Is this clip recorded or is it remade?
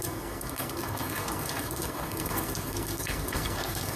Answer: remade